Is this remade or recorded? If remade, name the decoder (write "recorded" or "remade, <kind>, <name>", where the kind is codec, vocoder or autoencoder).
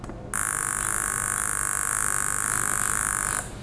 recorded